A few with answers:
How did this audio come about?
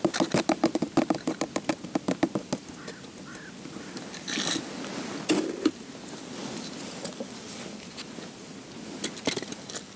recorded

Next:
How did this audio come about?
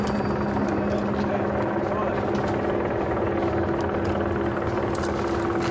recorded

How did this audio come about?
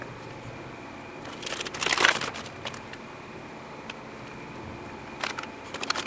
recorded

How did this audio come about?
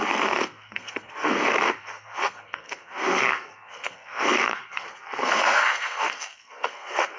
remade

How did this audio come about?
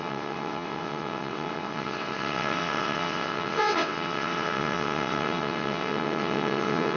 remade